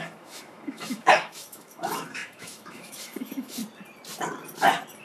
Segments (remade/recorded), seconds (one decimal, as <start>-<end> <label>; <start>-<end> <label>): 0.0-3.6 remade; 3.6-5.0 recorded